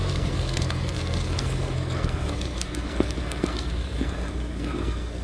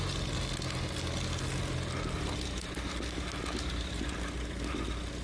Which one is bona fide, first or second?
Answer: second